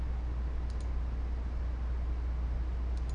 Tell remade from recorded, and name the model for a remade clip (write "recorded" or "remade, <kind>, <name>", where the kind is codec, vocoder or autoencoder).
recorded